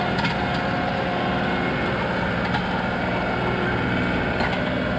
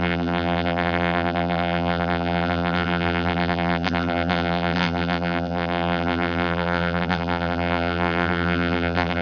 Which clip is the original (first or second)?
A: first